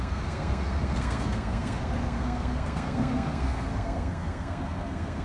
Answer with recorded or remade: remade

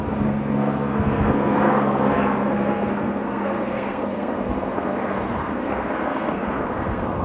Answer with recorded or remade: remade